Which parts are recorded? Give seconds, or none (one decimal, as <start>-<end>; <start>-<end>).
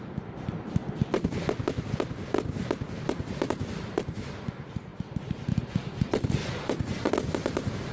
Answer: 0.0-6.4; 7.1-7.9